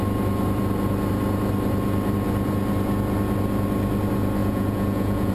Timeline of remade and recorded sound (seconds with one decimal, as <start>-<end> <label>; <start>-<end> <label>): 0.0-4.4 recorded; 4.4-5.3 remade